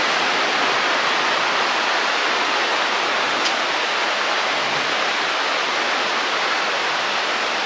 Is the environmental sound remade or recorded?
recorded